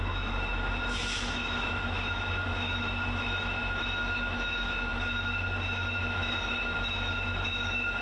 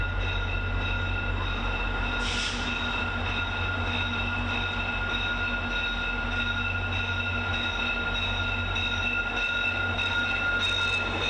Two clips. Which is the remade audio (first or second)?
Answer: first